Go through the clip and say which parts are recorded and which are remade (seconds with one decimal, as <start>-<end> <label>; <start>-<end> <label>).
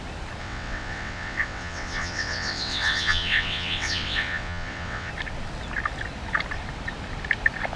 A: 0.0-0.4 recorded; 0.4-5.1 remade; 5.1-7.8 recorded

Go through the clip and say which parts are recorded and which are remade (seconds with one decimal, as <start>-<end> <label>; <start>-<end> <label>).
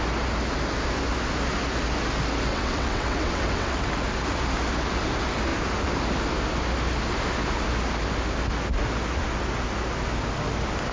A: 0.0-2.5 recorded; 2.5-3.9 remade; 3.9-10.9 recorded